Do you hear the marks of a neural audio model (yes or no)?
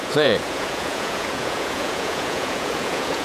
yes